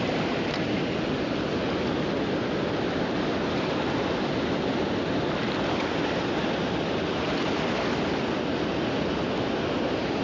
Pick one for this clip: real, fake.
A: real